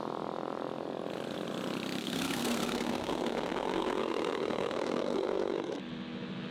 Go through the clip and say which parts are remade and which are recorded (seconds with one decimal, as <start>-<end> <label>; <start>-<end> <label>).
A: 0.0-2.0 recorded; 2.0-5.8 remade; 5.8-6.5 recorded